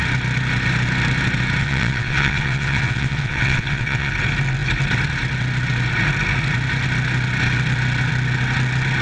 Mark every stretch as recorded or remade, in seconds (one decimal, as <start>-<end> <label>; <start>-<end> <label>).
0.0-1.6 recorded; 1.6-4.1 remade; 4.1-9.0 recorded